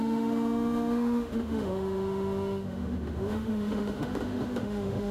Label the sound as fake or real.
fake